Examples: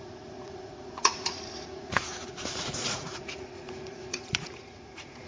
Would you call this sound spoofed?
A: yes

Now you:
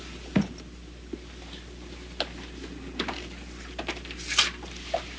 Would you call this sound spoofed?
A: no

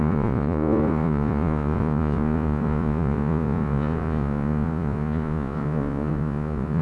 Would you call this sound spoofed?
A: yes